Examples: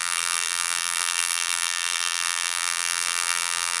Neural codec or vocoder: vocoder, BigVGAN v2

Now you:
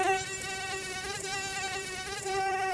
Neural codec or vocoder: vocoder, BigVGAN v2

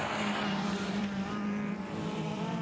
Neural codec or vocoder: vocoder, BigVGAN v2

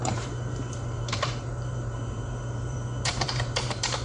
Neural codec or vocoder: vocoder, BigVGAN v2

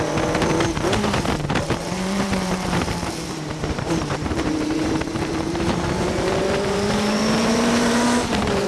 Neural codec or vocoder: vocoder, BigVGAN v2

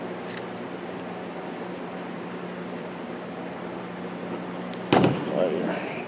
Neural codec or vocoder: none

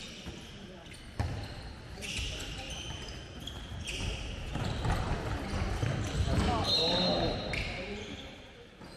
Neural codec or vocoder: none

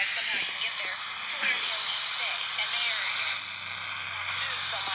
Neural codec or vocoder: none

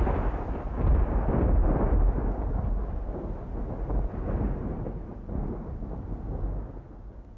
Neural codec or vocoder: none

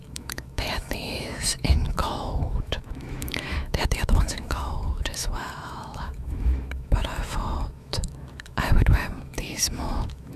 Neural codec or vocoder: autoencoder, DAC-VAE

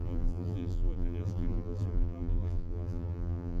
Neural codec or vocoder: vocoder, BigVGAN v2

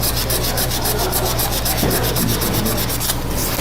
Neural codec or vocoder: none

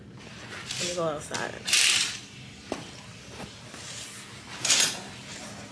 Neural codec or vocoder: none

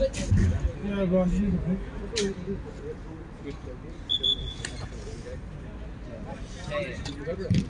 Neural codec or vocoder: none